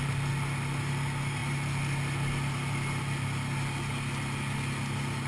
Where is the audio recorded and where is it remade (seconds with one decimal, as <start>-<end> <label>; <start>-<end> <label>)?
0.0-5.3 recorded